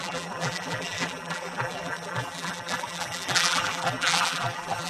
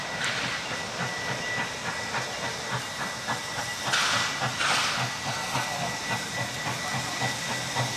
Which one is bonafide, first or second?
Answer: second